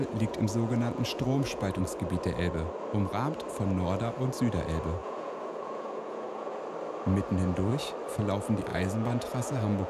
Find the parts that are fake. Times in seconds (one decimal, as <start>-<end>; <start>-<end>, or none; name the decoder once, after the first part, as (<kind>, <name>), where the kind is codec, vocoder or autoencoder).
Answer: 0.0-1.8 (vocoder, Vocos); 5.0-6.6; 8.7-9.9